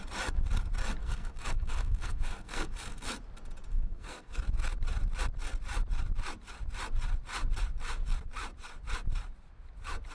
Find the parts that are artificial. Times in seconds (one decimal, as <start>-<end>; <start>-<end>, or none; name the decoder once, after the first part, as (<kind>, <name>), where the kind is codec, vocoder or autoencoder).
1.0-3.1 (codec, SNAC); 3.7-4.4

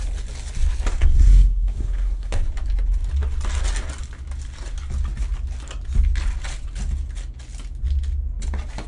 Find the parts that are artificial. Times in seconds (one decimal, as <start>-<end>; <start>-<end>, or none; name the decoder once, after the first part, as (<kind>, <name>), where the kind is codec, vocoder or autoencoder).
0.9-2.5 (codec, SNAC)

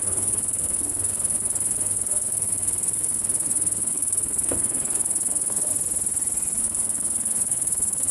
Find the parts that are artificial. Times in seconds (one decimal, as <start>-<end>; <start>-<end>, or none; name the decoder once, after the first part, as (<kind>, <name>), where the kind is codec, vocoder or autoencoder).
0.0-5.7 (codec, SNAC); 6.6-8.1

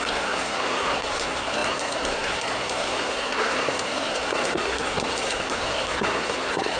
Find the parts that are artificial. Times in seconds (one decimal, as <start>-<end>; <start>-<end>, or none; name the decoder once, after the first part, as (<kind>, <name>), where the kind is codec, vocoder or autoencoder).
0.0-6.8 (codec, SNAC)

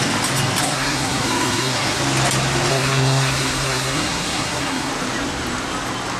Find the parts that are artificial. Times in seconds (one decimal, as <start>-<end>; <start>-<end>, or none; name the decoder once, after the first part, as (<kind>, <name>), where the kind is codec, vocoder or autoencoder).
0.6-2.0 (codec, SNAC); 2.7-4.9

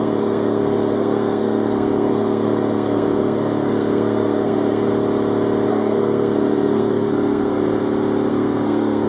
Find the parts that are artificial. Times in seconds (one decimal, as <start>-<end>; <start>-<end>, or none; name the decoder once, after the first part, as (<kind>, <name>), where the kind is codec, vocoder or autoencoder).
0.0-4.9 (codec, SNAC); 5.7-7.8; 8.3-9.1

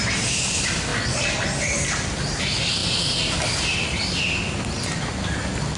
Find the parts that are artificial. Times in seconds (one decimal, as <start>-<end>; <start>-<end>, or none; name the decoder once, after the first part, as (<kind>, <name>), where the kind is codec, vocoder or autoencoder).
none